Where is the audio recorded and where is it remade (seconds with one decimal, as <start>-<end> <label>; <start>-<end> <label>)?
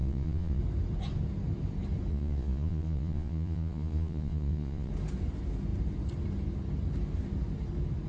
0.0-0.6 remade; 0.6-2.1 recorded; 2.1-4.9 remade; 4.9-8.1 recorded